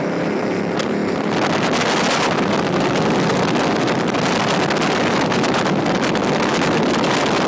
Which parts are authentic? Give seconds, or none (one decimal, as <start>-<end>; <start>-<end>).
0.0-7.5